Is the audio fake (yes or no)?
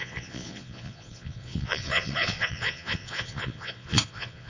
yes